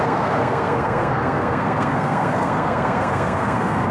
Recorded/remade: remade